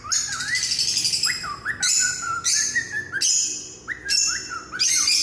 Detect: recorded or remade recorded